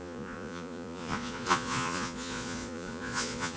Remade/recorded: remade